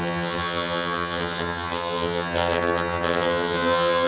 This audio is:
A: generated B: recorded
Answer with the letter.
A